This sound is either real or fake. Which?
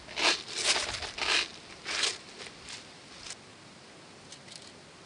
real